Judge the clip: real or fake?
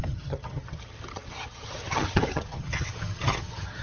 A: fake